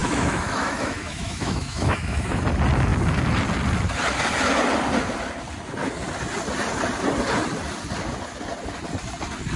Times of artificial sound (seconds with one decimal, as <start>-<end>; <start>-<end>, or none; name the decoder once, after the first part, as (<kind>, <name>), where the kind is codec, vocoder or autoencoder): 0.0-2.4 (autoencoder, DAC-VAE)